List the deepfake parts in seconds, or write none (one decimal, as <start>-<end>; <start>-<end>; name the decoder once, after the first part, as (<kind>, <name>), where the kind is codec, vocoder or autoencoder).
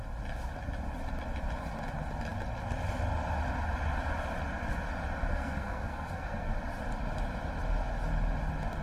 5.3-6.5 (codec, SNAC)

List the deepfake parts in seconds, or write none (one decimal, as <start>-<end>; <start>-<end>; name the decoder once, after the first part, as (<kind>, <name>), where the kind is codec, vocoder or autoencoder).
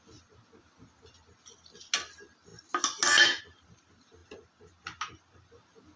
none